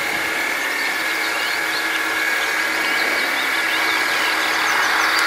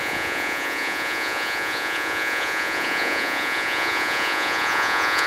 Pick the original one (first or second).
first